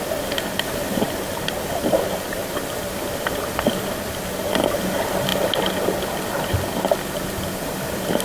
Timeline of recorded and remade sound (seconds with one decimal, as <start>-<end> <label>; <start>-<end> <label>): 0.0-8.2 recorded